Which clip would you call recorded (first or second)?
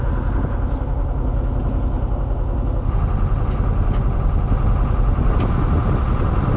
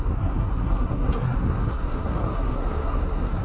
first